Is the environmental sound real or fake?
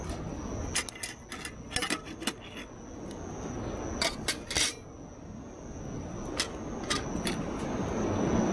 real